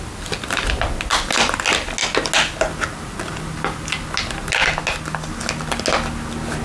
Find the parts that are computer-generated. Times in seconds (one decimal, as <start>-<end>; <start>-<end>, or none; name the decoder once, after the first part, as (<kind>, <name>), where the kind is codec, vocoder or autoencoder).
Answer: none